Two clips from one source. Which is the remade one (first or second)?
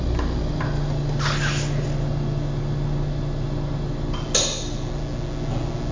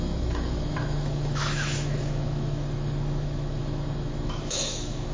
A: second